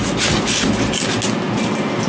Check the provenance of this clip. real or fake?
real